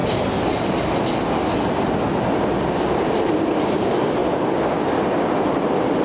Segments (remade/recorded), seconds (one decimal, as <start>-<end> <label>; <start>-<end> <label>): 0.0-6.0 recorded